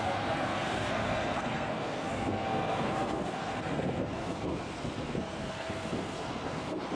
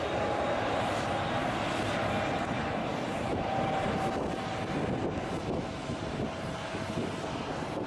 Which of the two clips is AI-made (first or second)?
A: first